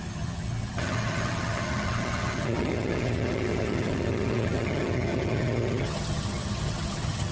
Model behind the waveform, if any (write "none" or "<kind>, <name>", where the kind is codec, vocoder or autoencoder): vocoder, HiFi-GAN